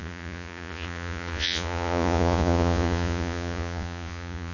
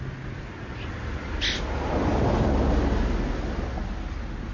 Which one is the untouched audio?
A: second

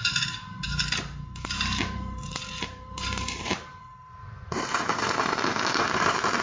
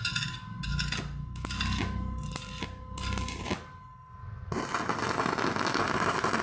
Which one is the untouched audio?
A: second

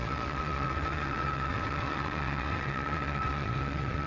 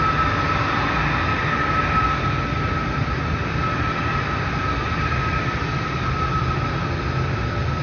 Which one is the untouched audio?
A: second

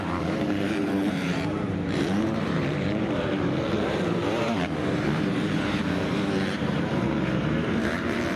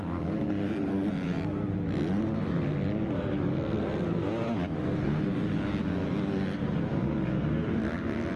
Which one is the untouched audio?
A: second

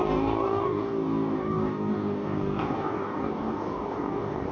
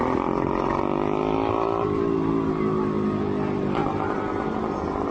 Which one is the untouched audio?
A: second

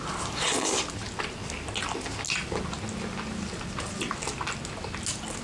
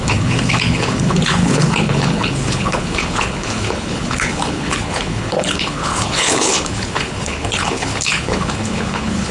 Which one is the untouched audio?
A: first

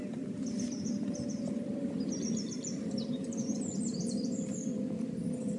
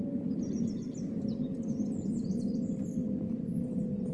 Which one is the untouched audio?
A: second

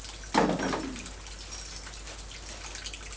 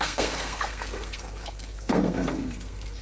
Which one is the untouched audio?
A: first